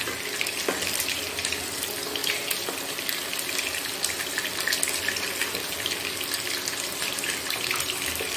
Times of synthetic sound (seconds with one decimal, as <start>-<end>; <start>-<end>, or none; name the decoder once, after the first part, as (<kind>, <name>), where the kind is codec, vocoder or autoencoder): none